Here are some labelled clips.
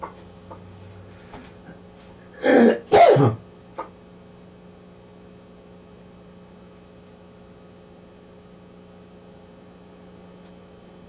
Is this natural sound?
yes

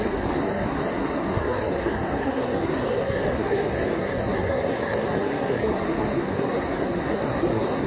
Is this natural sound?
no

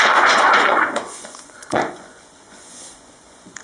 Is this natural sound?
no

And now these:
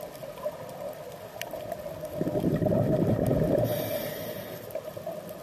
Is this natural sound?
yes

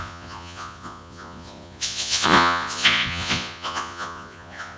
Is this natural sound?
no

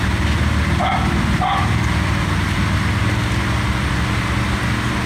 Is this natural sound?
yes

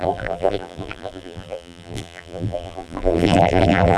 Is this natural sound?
no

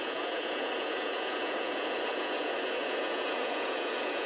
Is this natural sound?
no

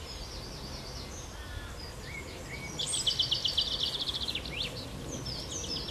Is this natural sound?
yes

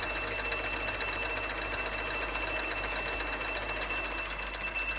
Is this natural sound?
yes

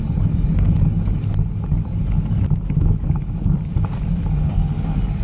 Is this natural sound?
yes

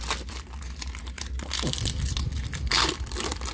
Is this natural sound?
yes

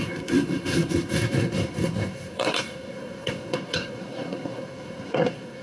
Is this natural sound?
no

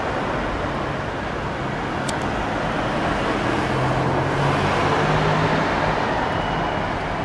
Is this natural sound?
yes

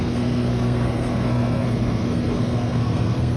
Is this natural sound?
no